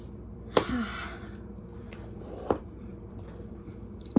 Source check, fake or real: fake